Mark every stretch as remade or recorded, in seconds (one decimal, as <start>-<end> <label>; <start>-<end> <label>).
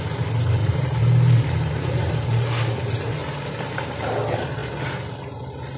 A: 0.0-0.6 recorded; 0.6-2.1 remade; 2.1-3.2 recorded; 3.2-4.1 remade; 4.1-5.8 recorded